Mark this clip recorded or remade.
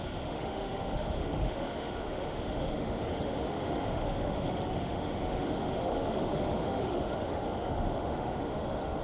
remade